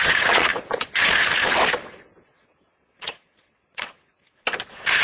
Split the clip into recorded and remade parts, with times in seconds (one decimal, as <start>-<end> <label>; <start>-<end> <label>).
0.0-0.5 remade; 0.5-2.3 recorded; 2.3-4.1 remade; 4.1-5.0 recorded